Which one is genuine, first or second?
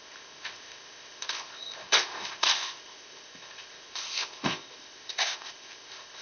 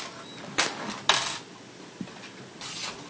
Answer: second